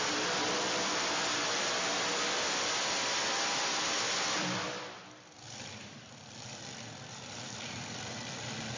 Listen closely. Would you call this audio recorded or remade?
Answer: remade